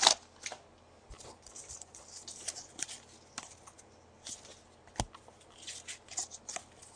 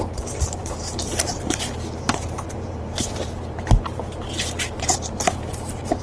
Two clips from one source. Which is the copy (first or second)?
second